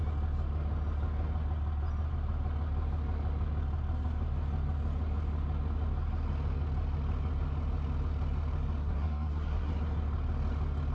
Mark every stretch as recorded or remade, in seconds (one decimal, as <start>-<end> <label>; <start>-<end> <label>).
0.0-8.8 recorded; 8.8-9.7 remade; 9.7-10.9 recorded